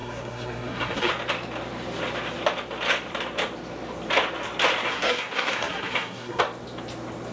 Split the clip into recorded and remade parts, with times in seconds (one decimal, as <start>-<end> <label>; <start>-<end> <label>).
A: 0.0-1.1 remade; 1.1-4.8 recorded; 4.8-6.4 remade; 6.4-7.3 recorded